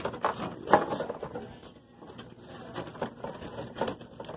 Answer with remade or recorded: recorded